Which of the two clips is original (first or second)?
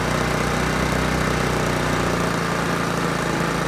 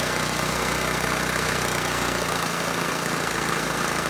first